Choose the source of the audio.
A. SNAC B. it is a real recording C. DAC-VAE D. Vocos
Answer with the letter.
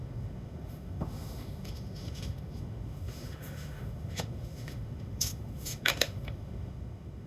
C